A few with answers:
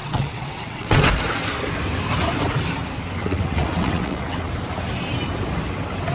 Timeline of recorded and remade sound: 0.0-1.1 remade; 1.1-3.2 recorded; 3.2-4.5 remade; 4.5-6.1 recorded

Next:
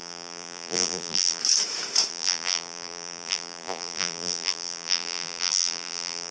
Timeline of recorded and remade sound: 0.0-1.4 remade; 1.4-2.1 recorded; 2.1-6.3 remade

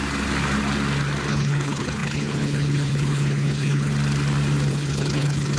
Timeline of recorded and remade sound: 0.0-1.3 recorded; 1.3-3.9 remade; 3.9-4.7 recorded; 4.7-5.6 remade

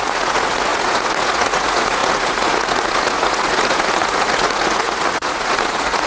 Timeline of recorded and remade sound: 0.0-6.1 remade

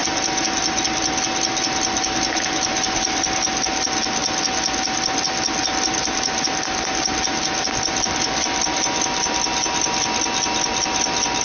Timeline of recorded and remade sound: 0.0-11.4 recorded

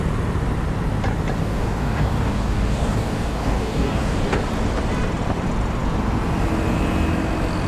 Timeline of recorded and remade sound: 0.0-1.4 recorded; 1.4-4.2 remade; 4.2-7.7 recorded

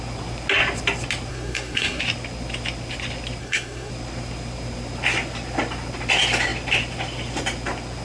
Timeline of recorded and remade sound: 0.0-1.3 recorded; 1.3-2.0 remade; 2.0-3.4 recorded; 3.4-3.9 remade; 3.9-8.0 recorded